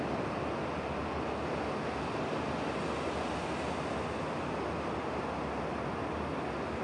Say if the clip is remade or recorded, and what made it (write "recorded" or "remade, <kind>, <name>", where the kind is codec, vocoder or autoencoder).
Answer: recorded